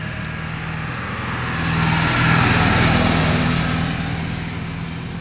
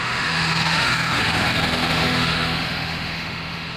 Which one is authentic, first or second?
first